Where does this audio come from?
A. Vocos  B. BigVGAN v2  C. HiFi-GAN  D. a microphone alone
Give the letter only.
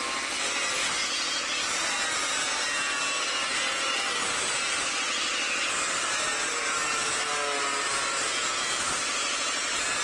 D